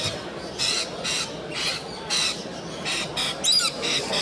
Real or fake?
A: real